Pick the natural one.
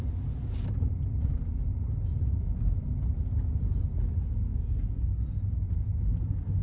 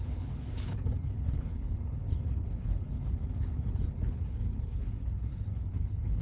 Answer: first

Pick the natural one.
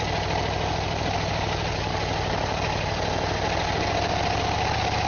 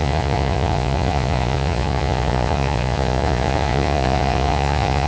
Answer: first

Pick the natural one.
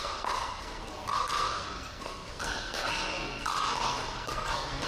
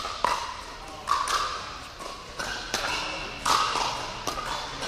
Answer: second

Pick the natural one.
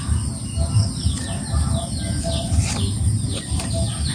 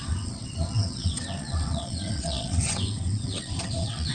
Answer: first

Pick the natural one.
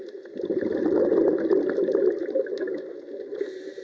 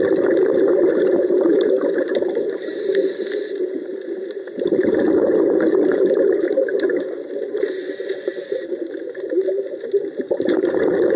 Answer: first